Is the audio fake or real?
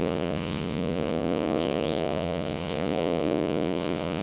fake